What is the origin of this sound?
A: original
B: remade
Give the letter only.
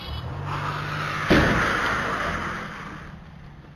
A